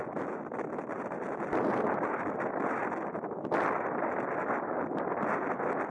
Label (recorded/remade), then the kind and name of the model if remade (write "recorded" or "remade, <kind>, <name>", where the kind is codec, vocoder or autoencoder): recorded